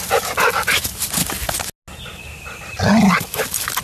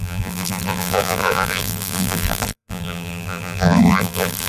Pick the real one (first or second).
first